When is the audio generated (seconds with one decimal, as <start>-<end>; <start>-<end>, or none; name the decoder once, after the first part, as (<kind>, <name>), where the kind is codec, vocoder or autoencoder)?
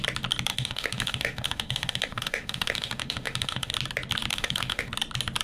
0.5-3.7 (autoencoder, DAC-VAE); 4.3-4.9